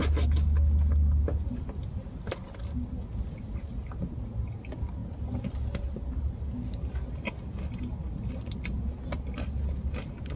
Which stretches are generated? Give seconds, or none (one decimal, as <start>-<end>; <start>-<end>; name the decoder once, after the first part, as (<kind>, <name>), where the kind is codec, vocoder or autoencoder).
none